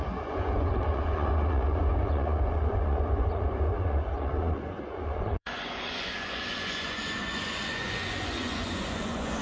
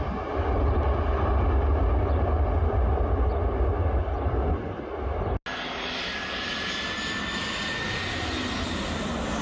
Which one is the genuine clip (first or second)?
second